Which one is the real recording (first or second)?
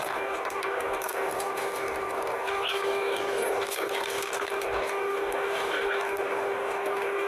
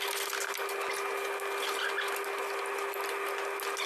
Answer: second